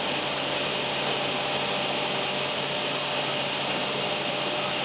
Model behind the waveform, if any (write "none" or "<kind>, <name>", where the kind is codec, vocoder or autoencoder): none